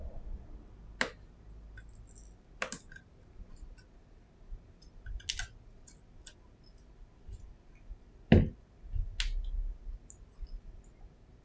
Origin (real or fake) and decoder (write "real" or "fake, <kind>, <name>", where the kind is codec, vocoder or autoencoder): real